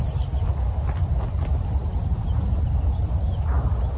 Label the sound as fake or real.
real